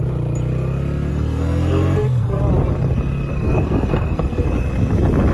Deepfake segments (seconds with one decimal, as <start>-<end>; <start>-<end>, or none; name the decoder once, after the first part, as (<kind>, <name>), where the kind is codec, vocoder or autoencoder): 1.1-2.4 (codec, SNAC); 3.3-4.5